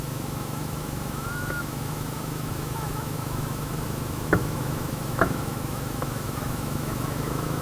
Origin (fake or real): fake